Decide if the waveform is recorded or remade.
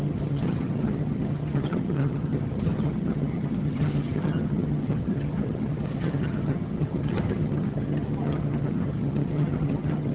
remade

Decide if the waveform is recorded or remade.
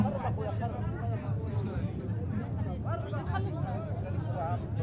recorded